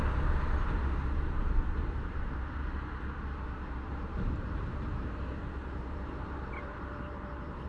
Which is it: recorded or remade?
remade